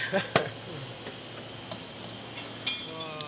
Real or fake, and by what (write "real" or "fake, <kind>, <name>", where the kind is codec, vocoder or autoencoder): real